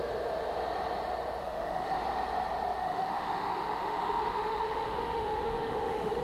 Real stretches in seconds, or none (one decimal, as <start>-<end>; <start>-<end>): 0.0-1.4; 2.0-2.8